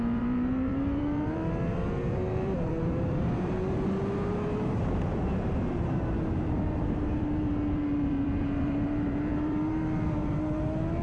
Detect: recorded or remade remade